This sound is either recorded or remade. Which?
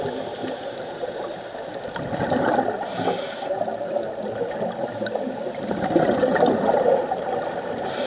recorded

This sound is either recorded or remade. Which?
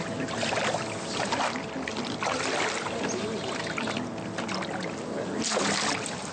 recorded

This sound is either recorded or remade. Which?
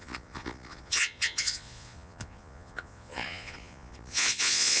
remade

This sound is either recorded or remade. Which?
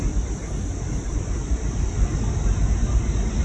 recorded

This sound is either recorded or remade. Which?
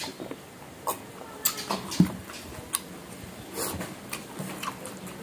recorded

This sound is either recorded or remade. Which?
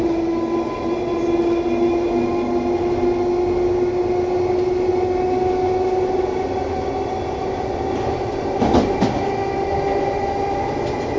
recorded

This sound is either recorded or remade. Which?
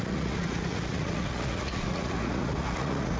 remade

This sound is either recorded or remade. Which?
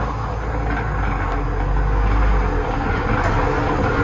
recorded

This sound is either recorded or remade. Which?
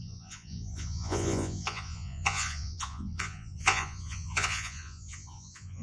remade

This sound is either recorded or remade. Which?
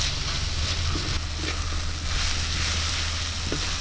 recorded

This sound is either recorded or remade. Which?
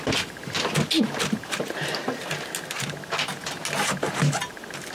recorded